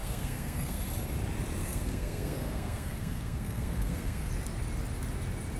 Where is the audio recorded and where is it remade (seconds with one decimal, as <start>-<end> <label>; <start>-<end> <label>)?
0.0-0.8 remade; 0.8-1.6 recorded; 1.6-4.3 remade; 4.3-5.6 recorded